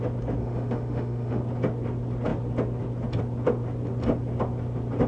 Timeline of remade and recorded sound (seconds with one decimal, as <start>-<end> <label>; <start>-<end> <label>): 0.0-0.4 recorded; 0.4-1.4 remade; 1.4-5.1 recorded